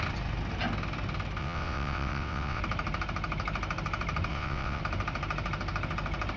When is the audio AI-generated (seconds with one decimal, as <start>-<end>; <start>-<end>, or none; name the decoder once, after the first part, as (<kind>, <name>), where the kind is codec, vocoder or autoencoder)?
1.4-2.6 (vocoder, WaveNeXt); 4.3-4.8